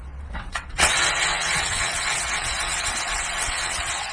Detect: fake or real fake